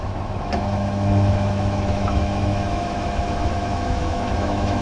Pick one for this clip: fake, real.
fake